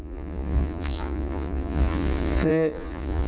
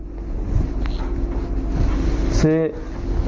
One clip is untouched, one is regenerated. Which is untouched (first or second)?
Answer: second